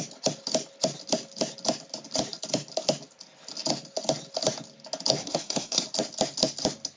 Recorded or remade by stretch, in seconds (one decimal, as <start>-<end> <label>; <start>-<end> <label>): 0.0-5.2 recorded; 5.2-5.8 remade; 5.8-7.0 recorded